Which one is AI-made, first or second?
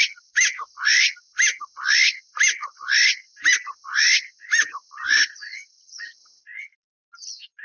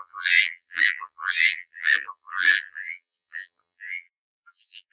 second